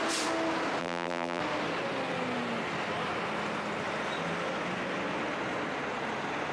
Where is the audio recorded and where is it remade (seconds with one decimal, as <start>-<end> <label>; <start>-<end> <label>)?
0.0-0.8 recorded; 0.8-1.4 remade; 1.4-6.5 recorded